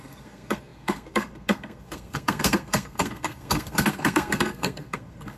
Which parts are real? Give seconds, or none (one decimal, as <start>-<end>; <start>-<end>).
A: none